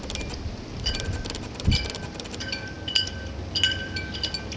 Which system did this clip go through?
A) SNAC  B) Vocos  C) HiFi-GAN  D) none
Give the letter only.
D